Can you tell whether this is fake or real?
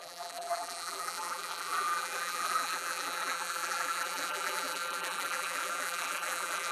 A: fake